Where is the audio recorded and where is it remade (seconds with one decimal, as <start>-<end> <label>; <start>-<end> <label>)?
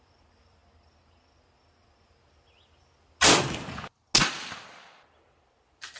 0.0-0.6 remade; 0.6-4.2 recorded; 4.2-6.0 remade